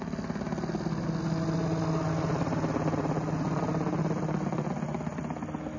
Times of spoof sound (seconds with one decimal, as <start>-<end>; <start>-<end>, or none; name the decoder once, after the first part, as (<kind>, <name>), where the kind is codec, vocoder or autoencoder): none